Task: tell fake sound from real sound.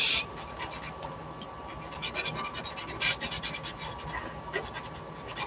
real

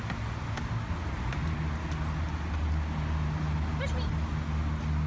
real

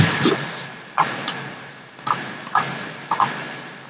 real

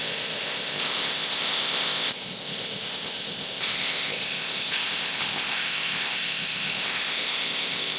fake